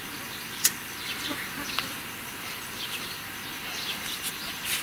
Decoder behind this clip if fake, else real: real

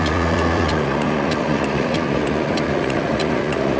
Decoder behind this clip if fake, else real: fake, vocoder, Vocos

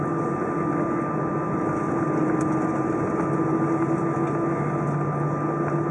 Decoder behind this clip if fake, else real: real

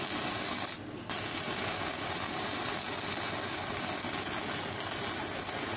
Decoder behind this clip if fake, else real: real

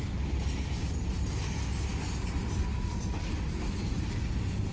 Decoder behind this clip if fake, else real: real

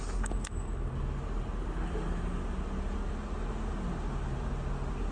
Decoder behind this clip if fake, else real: real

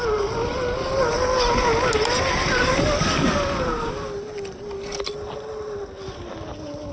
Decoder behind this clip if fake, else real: real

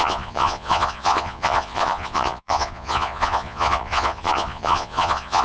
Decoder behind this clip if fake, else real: fake, vocoder, Vocos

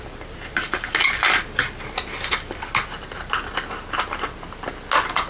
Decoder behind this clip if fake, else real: real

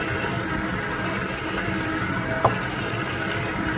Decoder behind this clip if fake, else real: real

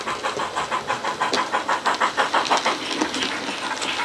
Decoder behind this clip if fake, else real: real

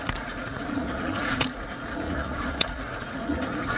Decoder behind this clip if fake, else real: fake, vocoder, Vocos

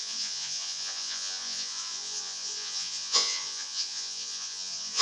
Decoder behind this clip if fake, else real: fake, vocoder, Vocos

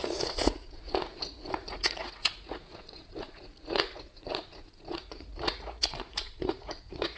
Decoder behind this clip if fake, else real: fake, vocoder, Vocos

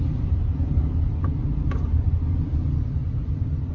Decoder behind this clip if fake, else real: real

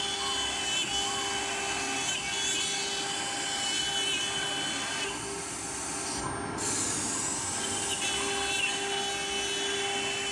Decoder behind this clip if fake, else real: real